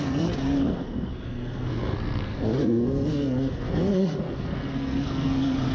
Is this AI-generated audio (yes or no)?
yes